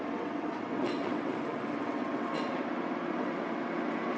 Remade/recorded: remade